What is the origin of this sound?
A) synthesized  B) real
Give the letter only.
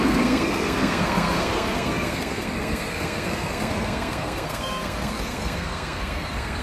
A